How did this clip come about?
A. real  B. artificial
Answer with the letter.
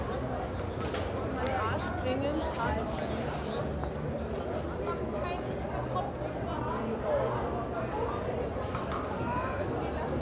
A